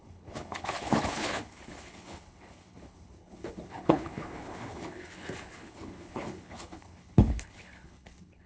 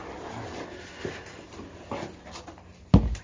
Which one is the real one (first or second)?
second